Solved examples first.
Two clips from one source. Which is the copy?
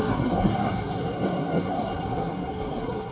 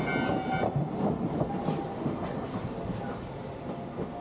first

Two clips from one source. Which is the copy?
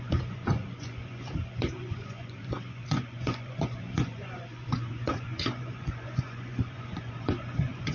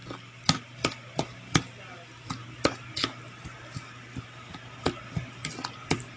first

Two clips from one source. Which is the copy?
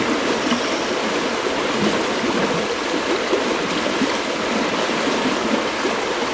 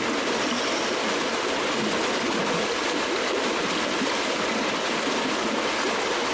first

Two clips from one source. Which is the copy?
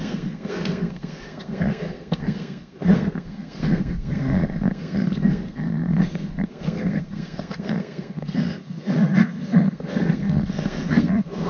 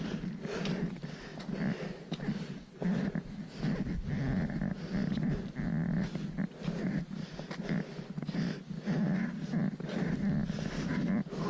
first